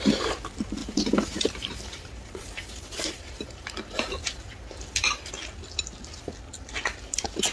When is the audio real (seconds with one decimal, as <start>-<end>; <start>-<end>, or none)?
0.0-0.8; 5.3-7.5